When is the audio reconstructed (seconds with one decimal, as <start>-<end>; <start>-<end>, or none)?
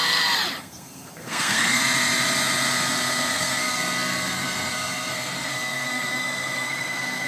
0.6-1.8; 3.3-7.3